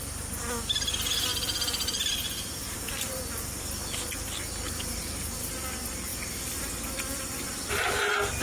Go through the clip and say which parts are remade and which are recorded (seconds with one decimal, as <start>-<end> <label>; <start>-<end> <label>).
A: 0.0-1.3 recorded; 1.3-2.8 remade; 2.8-8.4 recorded